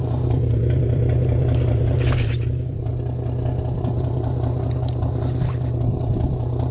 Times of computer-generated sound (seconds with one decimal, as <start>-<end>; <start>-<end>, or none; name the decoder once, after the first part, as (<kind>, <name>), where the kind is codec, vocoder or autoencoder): 0.0-2.9 (vocoder, BigVGAN v2); 3.8-6.7